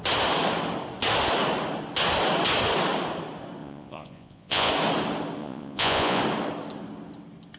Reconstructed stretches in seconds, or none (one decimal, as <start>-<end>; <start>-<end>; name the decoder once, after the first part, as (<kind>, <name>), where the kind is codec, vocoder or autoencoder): 3.6-4.7 (vocoder, Vocos); 5.4-6.2